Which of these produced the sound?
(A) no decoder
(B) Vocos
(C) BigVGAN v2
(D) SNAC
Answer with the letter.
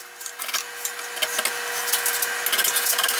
A